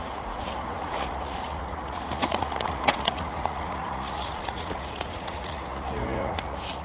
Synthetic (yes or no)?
yes